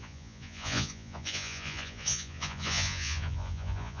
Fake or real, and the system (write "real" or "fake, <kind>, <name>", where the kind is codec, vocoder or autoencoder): fake, vocoder, Vocos